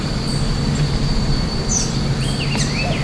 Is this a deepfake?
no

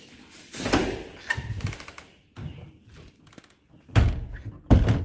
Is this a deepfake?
no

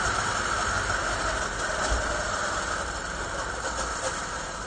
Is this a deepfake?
no